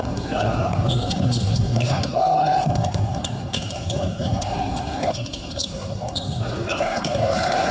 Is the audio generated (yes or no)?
yes